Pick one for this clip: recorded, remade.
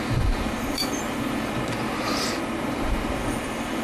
remade